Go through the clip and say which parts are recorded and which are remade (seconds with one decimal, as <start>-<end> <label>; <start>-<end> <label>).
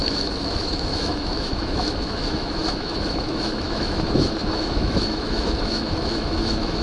0.0-6.8 remade